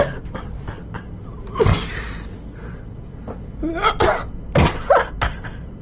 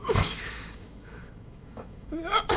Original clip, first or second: first